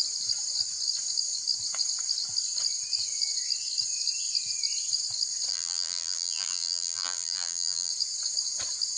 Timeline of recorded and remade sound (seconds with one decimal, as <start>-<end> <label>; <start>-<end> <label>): 0.0-5.5 recorded; 5.5-7.9 remade; 7.9-9.0 recorded